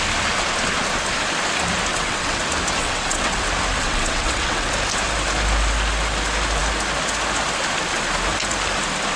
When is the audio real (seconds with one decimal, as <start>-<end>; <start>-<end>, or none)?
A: 0.0-1.9; 2.4-2.8; 3.4-3.8; 4.7-9.2